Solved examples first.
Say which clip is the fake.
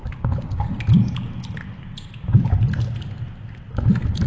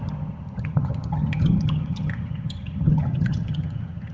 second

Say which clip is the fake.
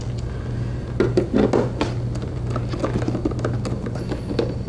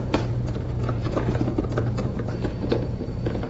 second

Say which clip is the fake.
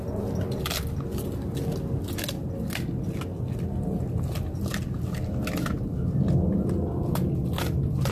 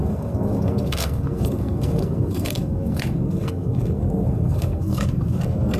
second